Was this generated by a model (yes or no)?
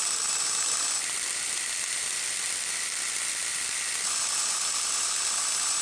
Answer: no